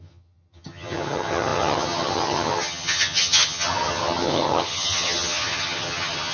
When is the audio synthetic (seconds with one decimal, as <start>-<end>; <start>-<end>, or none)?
0.0-6.3